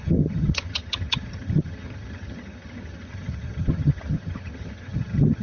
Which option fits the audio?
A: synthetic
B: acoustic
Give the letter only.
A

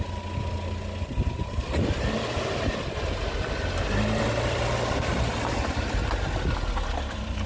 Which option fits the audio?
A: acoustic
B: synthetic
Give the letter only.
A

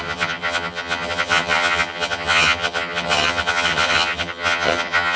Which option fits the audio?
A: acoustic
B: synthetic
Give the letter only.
B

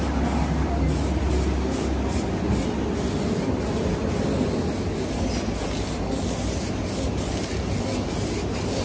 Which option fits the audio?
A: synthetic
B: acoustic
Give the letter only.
B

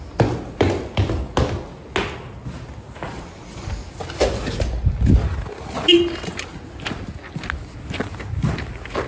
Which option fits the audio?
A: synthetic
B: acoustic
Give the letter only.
B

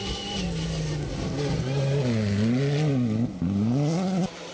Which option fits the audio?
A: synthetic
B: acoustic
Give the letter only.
B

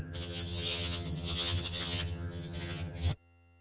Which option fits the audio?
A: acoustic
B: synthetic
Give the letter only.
B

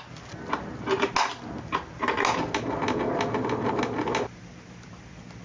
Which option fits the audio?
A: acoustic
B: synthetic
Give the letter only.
A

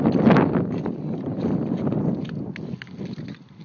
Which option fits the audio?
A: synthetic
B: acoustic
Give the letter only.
B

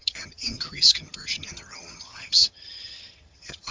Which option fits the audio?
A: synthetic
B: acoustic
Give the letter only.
A